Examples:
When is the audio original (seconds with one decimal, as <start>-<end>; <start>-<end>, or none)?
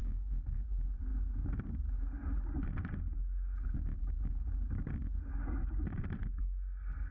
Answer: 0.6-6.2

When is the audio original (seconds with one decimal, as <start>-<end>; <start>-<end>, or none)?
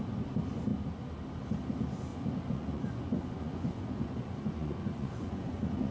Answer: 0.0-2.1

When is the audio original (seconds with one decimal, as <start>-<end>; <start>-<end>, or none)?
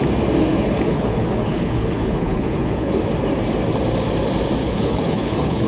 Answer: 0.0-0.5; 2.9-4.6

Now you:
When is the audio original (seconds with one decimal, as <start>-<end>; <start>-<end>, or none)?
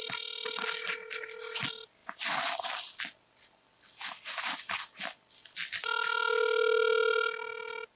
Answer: 0.0-8.0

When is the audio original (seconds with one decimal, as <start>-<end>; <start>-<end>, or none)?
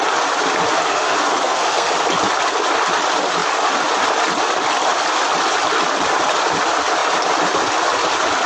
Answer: 0.0-0.9; 1.9-8.5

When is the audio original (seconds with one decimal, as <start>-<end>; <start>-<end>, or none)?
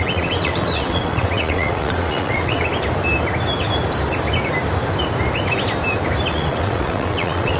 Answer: 2.7-6.3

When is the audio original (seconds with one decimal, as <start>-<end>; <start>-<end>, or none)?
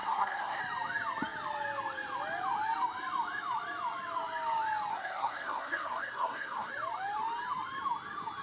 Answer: 0.6-4.9; 6.7-8.4